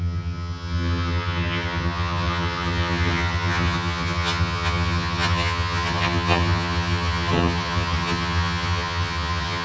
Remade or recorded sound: remade